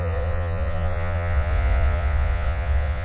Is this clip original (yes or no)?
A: no